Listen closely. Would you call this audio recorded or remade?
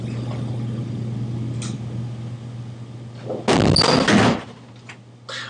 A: recorded